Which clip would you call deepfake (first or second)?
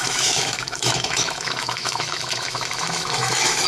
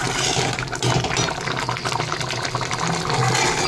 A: first